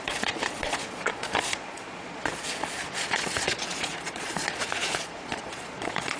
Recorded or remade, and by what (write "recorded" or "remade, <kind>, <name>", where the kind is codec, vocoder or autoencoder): remade, vocoder, Vocos